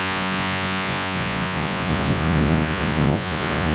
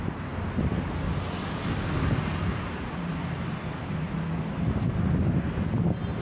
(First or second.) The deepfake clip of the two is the first